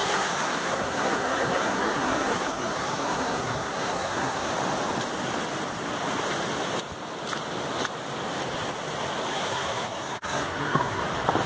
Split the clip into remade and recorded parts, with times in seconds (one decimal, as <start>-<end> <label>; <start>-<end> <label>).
0.0-4.5 remade; 4.5-9.3 recorded; 9.3-11.0 remade; 11.0-11.5 recorded